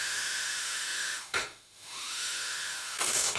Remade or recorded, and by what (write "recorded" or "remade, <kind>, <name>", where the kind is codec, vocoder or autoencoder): remade, autoencoder, DAC-VAE